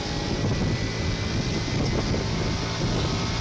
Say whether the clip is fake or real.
real